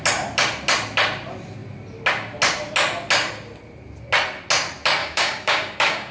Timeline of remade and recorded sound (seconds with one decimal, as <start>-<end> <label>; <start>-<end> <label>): 0.0-5.0 recorded; 5.0-6.1 remade